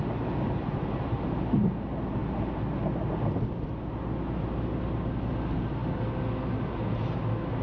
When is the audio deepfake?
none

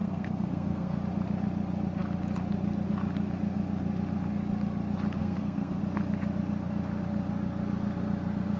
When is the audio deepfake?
0.0-1.0 (codec, SNAC); 5.2-5.8

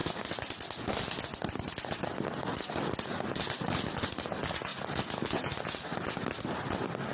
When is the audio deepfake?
none